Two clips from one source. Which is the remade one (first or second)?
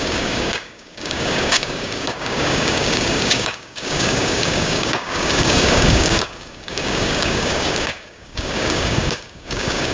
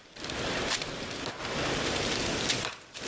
first